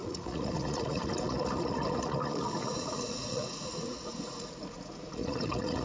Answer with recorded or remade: remade